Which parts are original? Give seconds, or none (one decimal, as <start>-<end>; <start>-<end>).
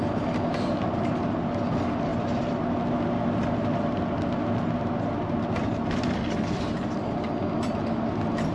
0.0-8.5